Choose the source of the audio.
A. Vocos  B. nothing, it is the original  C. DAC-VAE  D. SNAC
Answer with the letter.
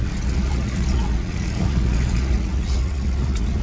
A